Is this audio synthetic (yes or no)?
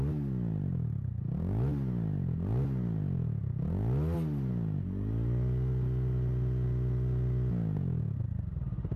no